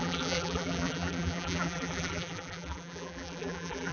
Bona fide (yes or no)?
no